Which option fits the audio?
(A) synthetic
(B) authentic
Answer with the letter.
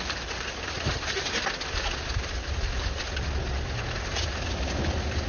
B